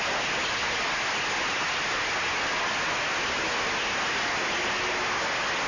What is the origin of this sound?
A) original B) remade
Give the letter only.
A